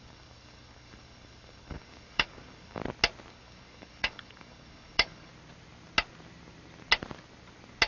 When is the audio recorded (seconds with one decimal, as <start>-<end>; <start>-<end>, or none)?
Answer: 2.8-3.3; 5.3-7.9